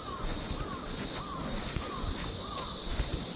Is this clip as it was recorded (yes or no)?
no